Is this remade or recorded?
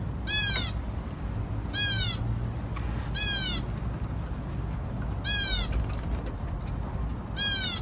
recorded